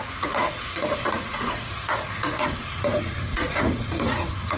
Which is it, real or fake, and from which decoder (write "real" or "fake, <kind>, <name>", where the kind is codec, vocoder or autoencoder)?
fake, vocoder, Vocos